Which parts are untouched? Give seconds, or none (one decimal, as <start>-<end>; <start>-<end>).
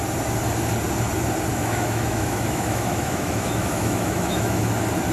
0.0-1.5; 4.6-5.1